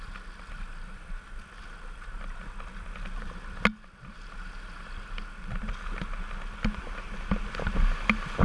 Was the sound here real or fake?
real